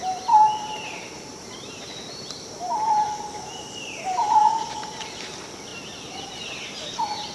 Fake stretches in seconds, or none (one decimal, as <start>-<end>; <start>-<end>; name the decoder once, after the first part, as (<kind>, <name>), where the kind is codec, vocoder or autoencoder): 0.5-4.9 (vocoder, BigVGAN v2)